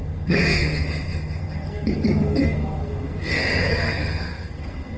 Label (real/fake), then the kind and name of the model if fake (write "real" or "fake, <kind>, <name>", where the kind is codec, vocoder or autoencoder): fake, codec, SNAC